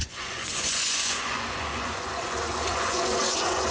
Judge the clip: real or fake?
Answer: fake